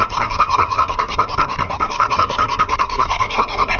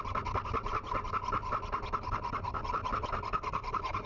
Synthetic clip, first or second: first